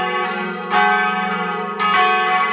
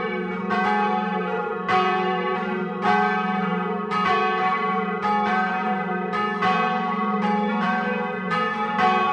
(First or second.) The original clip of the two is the first